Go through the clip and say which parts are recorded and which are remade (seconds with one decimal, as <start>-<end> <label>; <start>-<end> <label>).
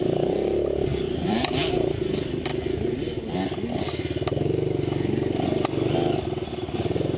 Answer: 0.0-0.9 recorded; 0.9-1.7 remade; 1.7-7.2 recorded